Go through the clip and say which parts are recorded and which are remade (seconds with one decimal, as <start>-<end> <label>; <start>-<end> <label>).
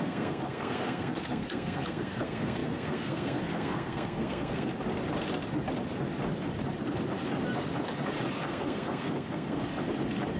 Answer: 0.0-4.7 remade; 4.7-8.4 recorded; 8.4-9.6 remade; 9.6-10.4 recorded